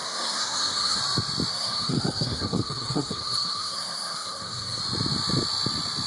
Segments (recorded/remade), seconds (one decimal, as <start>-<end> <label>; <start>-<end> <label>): 0.0-1.0 remade; 1.0-1.5 recorded; 1.5-4.8 remade; 4.8-6.1 recorded